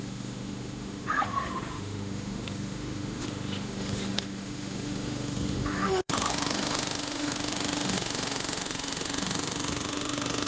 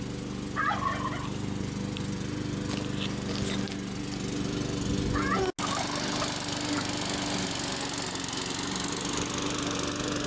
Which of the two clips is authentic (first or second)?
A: second